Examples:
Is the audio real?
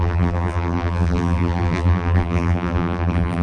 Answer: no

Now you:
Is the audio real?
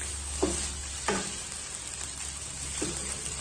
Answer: yes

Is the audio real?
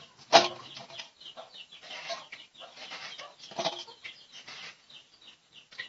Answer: no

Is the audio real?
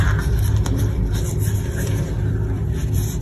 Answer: no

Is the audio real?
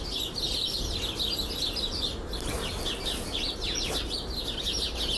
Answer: yes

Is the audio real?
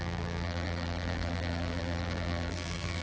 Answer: no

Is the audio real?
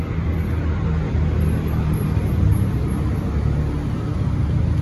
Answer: yes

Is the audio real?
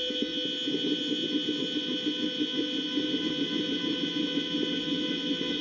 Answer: yes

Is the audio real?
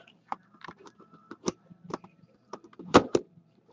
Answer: no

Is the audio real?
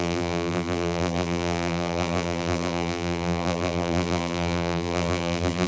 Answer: no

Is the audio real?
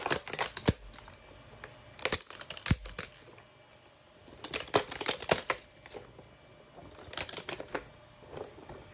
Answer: yes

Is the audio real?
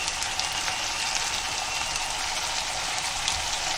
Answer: yes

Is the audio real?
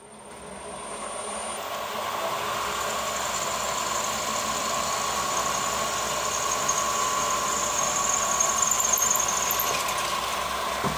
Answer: yes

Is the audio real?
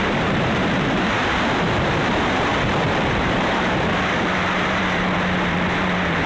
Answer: no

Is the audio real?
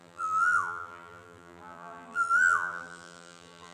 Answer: no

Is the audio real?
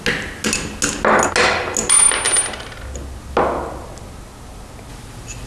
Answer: yes